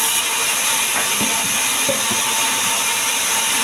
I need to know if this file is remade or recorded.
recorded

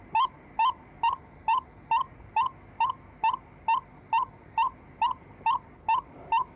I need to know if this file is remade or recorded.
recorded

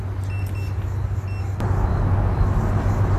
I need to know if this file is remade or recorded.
recorded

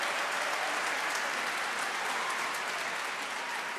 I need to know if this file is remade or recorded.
recorded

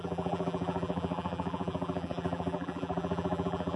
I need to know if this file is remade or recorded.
remade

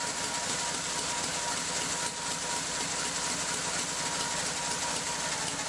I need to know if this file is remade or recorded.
recorded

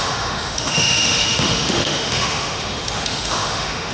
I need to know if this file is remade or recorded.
remade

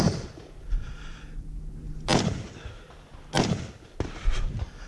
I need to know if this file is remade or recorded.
recorded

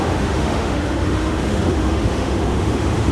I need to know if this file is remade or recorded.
remade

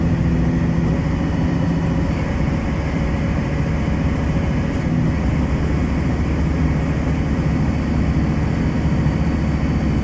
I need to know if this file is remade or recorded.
recorded